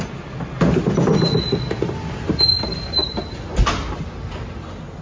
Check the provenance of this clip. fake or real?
real